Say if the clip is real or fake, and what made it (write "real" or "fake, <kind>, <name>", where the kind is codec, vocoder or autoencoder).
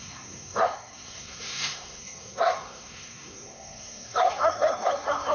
fake, codec, SNAC